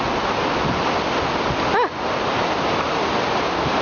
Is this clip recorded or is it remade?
recorded